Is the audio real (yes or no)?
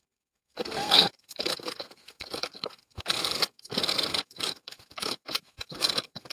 no